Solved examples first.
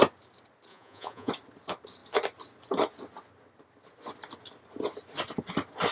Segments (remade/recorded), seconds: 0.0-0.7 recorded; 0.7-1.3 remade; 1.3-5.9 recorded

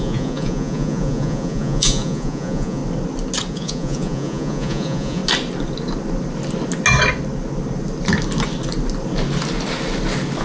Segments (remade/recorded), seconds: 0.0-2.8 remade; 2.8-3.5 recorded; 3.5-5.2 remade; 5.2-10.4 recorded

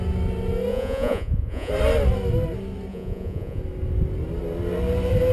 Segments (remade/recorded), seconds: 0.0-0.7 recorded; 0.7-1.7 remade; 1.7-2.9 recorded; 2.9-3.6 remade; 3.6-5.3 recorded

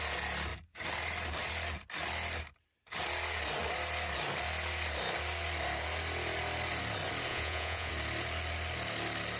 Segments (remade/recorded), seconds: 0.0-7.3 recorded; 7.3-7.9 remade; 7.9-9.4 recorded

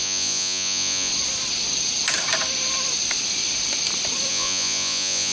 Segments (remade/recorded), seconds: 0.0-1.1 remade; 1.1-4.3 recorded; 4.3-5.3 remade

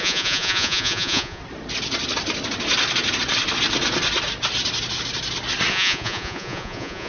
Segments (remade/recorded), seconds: 0.0-1.4 remade; 1.4-5.7 recorded; 5.7-7.1 remade

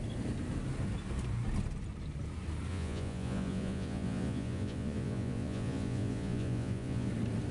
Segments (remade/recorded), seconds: 0.0-2.7 recorded; 2.7-7.1 remade; 7.1-7.5 recorded

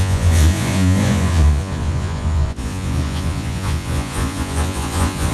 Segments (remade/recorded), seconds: 0.0-5.3 remade